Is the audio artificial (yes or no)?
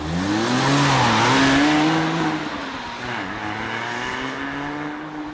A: no